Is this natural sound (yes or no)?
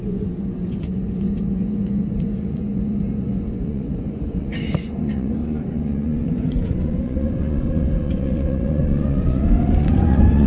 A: no